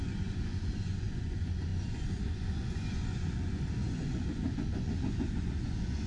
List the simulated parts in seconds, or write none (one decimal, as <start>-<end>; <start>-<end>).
0.0-6.1